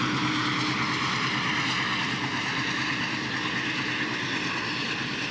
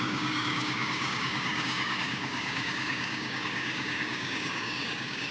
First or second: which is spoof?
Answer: second